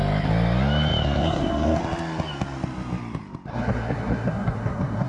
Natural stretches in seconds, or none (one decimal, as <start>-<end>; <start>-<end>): 0.0-1.2; 1.8-3.5